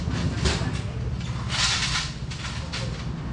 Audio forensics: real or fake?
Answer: real